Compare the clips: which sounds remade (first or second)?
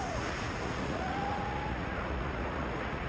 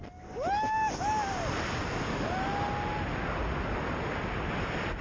first